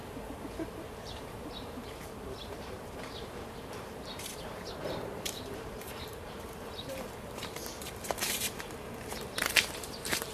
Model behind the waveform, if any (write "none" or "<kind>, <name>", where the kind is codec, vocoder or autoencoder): vocoder, BigVGAN v2